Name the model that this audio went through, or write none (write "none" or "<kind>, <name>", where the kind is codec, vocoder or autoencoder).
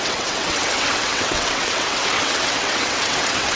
vocoder, WaveNeXt